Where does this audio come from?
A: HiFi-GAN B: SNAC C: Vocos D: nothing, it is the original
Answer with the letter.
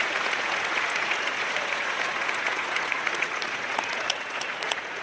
C